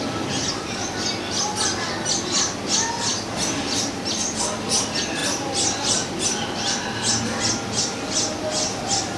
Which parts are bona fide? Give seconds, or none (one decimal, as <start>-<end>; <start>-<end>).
0.0-9.2